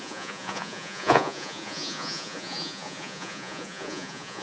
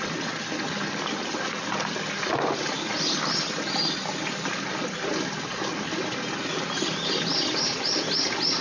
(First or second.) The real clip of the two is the second